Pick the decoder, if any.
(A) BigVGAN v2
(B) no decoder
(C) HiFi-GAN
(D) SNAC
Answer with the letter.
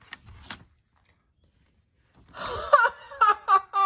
B